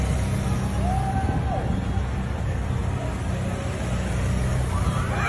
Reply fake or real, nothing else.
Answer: real